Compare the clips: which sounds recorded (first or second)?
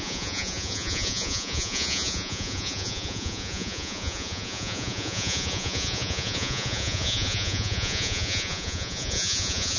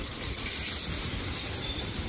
second